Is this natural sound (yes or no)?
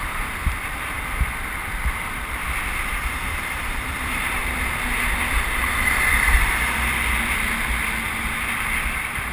no